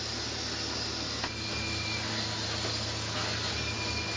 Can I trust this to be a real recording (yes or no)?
yes